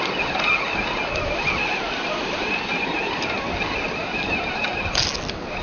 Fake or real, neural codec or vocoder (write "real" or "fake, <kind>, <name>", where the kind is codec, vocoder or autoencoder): real